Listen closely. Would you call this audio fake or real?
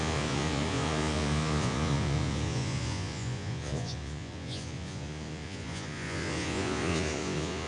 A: fake